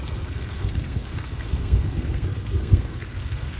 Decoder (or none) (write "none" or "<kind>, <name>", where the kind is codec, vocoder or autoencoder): codec, SNAC